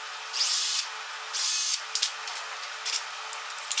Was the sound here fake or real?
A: real